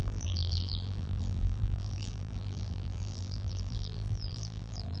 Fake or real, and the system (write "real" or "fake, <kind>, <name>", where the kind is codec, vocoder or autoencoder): fake, vocoder, BigVGAN v2